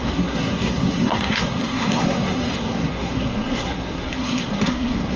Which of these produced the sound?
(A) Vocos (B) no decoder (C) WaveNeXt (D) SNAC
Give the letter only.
D